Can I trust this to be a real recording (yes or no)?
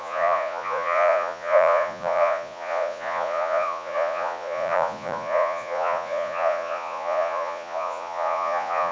no